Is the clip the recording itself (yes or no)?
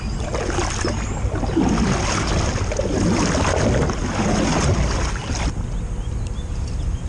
yes